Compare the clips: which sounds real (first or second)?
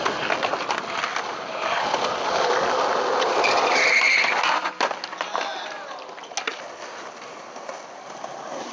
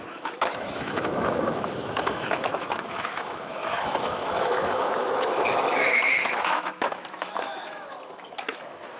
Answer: first